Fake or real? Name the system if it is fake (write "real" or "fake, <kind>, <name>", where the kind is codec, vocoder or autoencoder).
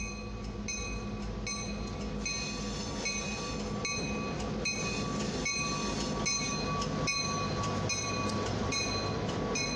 real